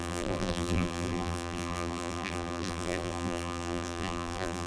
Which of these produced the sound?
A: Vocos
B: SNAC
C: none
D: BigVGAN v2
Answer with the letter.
D